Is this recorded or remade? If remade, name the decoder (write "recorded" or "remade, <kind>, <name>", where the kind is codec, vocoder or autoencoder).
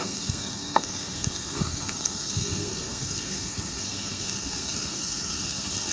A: remade, codec, SNAC